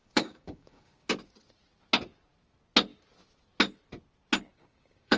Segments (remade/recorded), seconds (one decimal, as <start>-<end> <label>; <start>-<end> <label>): 0.0-1.1 remade; 1.1-4.5 recorded; 4.5-5.2 remade